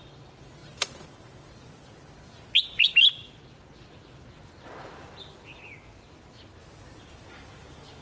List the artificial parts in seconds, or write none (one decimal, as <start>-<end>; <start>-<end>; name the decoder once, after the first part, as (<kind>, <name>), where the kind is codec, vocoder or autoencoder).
none